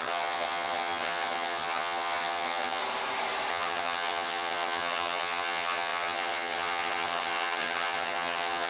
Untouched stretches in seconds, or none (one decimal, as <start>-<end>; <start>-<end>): 2.8-3.5